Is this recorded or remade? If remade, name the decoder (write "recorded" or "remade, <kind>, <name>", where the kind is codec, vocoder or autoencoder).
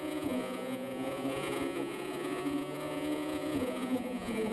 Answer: remade, vocoder, Vocos